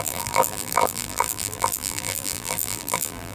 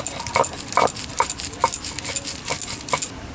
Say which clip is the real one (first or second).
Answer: second